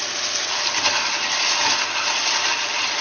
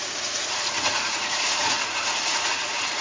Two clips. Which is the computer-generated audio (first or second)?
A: second